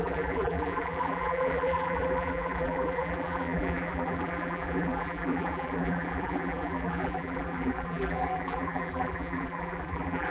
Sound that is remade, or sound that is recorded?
remade